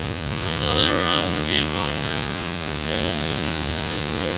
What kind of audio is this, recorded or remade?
remade